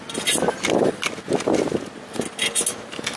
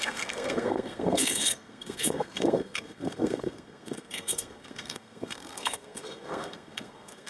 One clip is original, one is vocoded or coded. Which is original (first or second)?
first